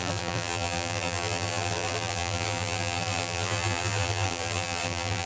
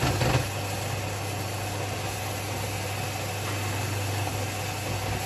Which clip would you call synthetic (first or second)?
first